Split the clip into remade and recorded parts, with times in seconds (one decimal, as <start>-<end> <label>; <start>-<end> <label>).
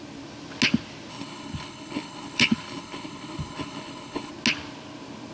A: 0.0-1.1 recorded; 1.1-4.3 remade; 4.3-5.3 recorded